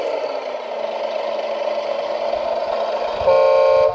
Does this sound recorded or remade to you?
recorded